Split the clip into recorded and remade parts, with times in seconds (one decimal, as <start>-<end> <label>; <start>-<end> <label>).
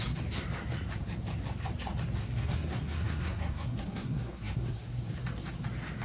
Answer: 0.0-2.2 recorded; 2.2-5.1 remade; 5.1-6.0 recorded